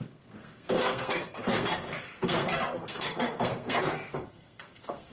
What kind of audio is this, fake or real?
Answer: fake